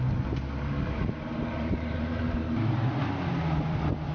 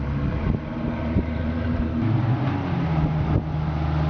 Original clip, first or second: second